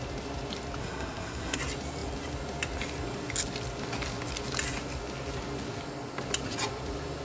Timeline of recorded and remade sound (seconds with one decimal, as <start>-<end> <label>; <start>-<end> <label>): 0.0-0.8 recorded; 0.8-1.6 remade; 1.6-7.2 recorded